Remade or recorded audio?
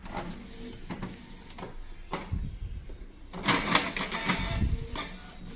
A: recorded